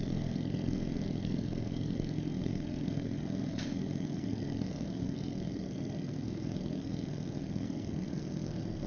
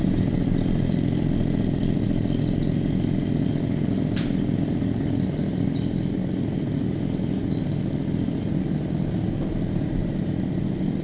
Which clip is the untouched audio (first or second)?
second